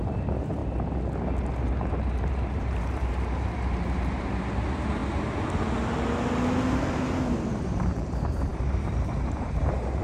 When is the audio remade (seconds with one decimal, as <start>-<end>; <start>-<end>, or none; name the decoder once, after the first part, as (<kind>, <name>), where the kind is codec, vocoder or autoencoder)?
0.0-0.6 (vocoder, BigVGAN v2); 1.7-5.0; 7.5-10.0